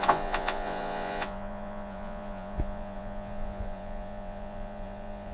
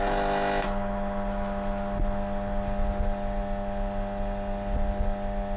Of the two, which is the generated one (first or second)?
first